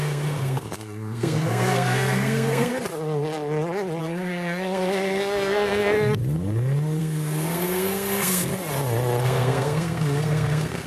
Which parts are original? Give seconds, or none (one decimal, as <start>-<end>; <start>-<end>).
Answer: 2.7-4.0; 6.2-7.0; 8.5-9.2